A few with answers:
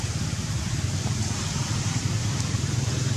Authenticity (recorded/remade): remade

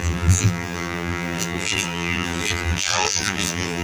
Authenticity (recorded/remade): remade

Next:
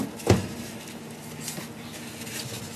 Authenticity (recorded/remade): recorded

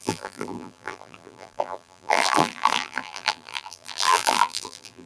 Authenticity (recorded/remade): remade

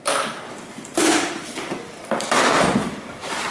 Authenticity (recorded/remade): remade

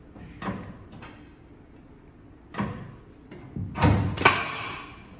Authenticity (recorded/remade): recorded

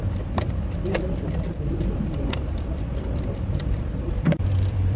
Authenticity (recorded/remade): remade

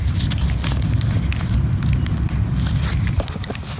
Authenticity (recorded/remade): recorded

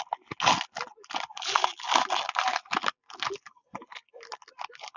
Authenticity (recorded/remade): recorded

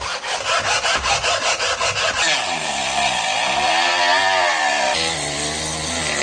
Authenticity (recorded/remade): recorded